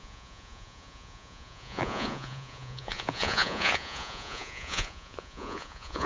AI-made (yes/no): yes